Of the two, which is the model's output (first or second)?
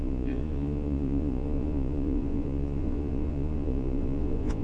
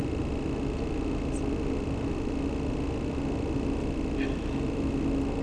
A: first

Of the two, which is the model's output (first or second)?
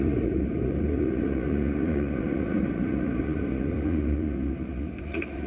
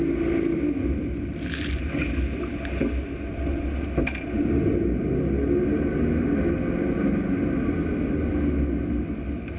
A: first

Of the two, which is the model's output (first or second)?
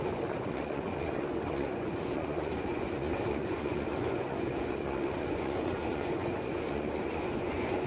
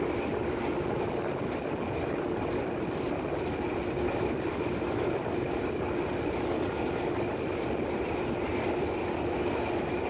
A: first